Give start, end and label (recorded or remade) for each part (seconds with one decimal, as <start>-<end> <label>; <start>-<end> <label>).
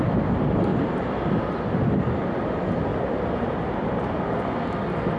0.0-0.7 recorded; 0.7-1.6 remade; 1.6-2.9 recorded; 2.9-4.2 remade; 4.2-5.2 recorded